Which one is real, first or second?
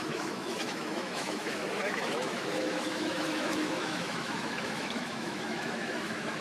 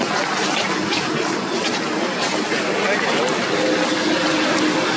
second